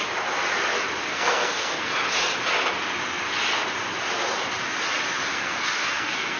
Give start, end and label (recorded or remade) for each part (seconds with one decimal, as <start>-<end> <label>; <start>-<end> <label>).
0.0-1.1 recorded; 1.1-1.9 remade; 1.9-5.3 recorded; 5.3-6.4 remade